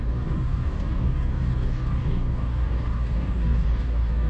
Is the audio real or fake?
fake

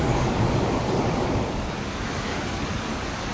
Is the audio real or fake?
fake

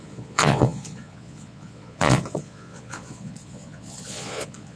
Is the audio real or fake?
fake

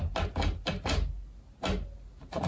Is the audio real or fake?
real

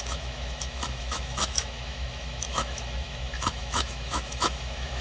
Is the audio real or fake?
fake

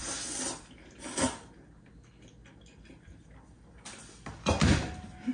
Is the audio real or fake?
real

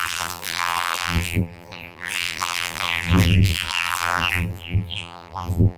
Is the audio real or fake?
fake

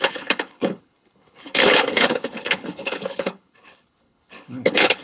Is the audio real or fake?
fake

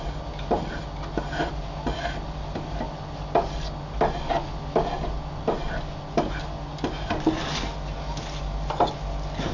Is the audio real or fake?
real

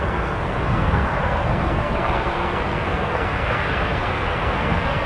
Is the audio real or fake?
fake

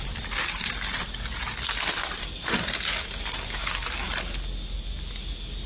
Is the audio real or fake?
real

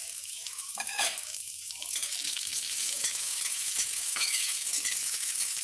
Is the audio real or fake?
fake